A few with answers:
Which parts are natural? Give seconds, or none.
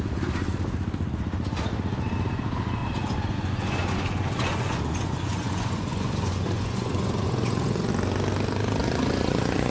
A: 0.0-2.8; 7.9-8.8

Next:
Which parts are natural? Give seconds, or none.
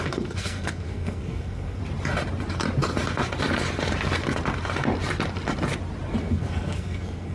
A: 1.8-6.2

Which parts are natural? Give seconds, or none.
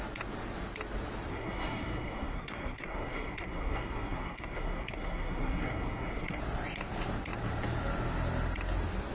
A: 0.0-1.3; 6.4-9.1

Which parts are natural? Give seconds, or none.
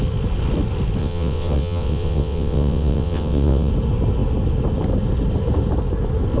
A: 0.0-1.0; 3.7-6.4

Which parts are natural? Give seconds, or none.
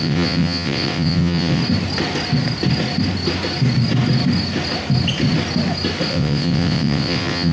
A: 1.6-6.1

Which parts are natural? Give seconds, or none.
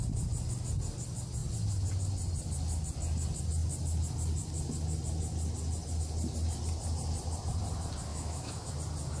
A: 0.0-8.1; 8.7-9.2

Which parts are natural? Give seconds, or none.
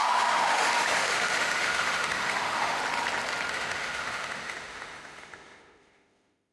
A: 2.8-3.5